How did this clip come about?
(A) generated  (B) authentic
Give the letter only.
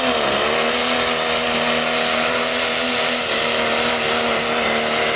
B